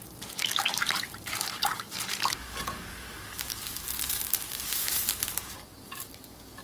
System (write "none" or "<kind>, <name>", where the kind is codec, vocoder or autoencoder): codec, DAC